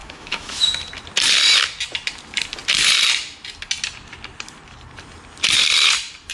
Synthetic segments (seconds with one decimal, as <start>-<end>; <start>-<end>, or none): 0.0-0.6